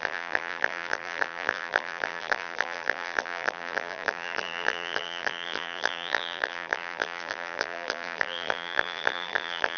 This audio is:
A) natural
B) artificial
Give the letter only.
B